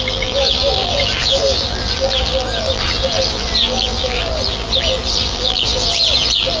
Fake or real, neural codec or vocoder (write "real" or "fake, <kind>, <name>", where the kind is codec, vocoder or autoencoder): fake, vocoder, BigVGAN v2